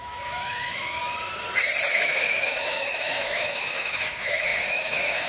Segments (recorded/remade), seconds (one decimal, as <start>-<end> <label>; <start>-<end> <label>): 0.0-1.0 remade; 1.0-1.9 recorded; 1.9-5.3 remade